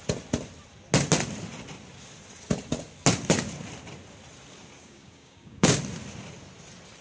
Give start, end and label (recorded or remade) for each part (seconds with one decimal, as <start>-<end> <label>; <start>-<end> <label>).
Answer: 0.0-4.8 recorded; 4.8-5.8 remade; 5.8-7.0 recorded